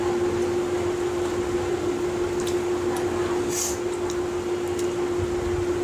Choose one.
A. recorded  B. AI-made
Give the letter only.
A